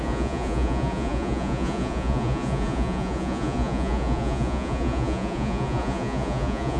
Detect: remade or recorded remade